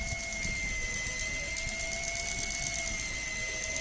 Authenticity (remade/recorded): recorded